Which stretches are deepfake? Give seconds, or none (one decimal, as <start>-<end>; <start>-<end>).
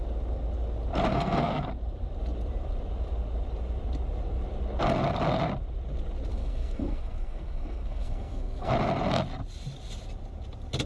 1.1-1.7; 6.3-8.7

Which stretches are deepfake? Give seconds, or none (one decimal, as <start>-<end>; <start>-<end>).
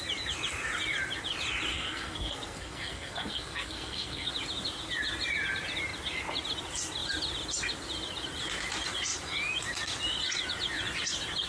1.7-4.3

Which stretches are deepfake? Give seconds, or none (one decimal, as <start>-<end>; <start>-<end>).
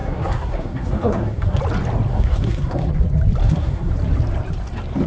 0.0-1.6; 2.1-2.9; 3.4-3.9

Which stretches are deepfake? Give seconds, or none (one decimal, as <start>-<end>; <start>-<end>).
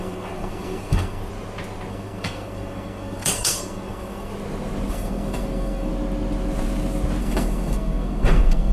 0.0-1.2; 1.9-4.3; 4.9-5.9; 7.2-8.7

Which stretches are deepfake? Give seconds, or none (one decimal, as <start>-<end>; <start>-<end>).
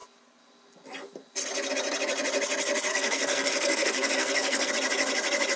2.9-4.7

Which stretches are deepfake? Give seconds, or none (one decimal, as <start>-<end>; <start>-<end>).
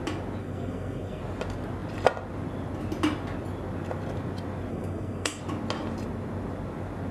0.4-1.2; 4.7-5.4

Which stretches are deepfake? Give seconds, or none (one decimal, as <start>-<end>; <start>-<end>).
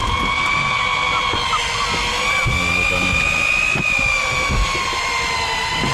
none